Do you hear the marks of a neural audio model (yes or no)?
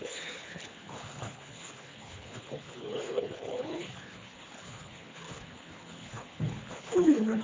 yes